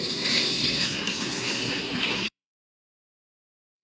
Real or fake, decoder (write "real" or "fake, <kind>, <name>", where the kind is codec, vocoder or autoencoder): fake, codec, SNAC